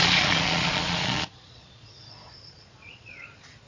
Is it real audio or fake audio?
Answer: fake